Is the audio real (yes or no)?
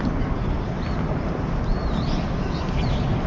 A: yes